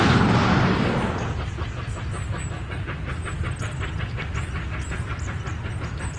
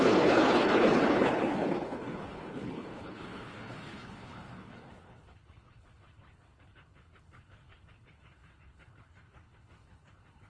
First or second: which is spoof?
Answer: second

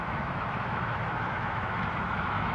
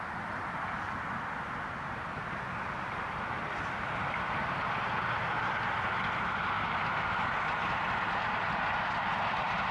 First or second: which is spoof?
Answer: first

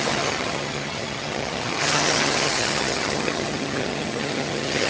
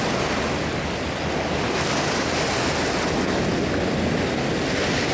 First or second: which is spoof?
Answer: first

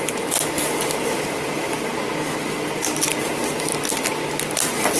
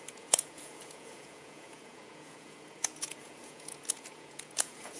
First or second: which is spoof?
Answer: second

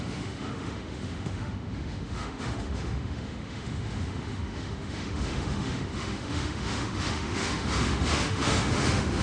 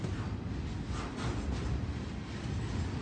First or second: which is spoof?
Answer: first